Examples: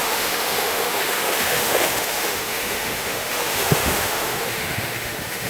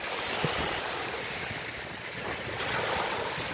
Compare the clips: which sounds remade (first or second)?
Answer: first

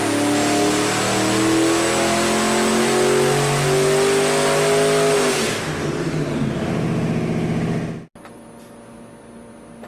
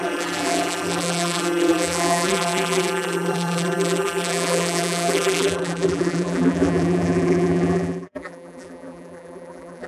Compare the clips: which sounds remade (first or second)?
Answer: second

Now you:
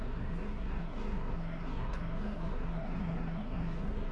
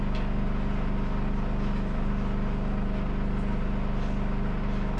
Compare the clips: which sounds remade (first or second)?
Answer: first